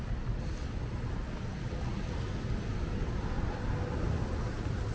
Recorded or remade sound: recorded